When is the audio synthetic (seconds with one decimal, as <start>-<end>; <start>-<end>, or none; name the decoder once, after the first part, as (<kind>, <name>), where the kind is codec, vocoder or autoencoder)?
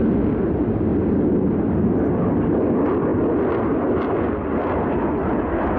none